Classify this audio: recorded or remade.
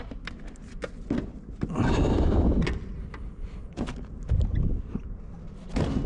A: recorded